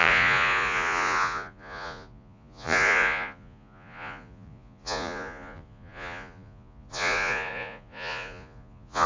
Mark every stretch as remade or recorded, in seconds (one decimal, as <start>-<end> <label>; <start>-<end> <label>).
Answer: 0.0-9.1 remade

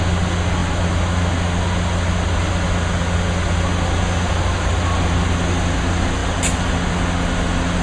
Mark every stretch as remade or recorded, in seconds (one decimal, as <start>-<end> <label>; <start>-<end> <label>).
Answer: 0.0-7.8 recorded